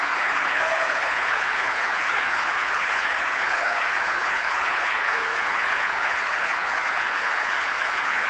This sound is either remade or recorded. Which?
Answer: remade